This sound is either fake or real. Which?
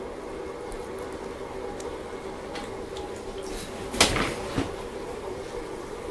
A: real